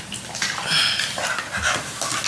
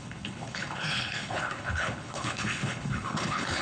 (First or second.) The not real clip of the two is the second